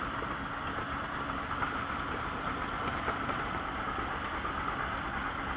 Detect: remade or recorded recorded